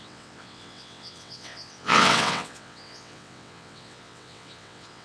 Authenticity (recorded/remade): remade